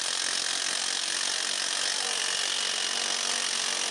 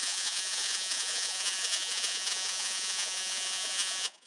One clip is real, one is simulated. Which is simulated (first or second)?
second